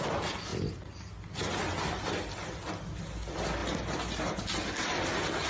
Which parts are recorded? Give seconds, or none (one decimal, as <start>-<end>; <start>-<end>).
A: 0.0-5.5